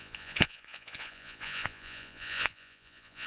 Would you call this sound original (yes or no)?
no